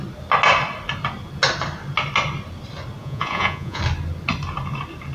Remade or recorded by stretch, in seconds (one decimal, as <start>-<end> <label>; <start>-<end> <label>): 0.0-3.0 recorded; 3.0-3.8 remade; 3.8-5.1 recorded